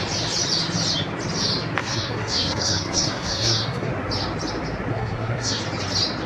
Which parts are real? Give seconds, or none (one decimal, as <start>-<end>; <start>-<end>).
0.0-1.8; 3.9-4.9; 5.6-6.3